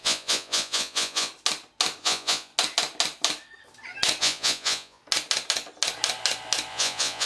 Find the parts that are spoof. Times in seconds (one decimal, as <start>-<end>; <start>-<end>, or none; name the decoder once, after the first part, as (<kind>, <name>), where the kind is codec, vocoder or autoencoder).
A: 0.0-1.3 (vocoder, Vocos); 2.0-2.5; 4.2-5.0; 6.7-7.3